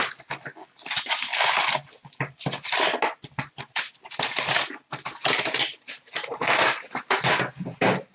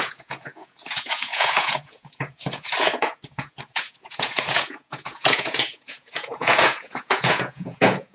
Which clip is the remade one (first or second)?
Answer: second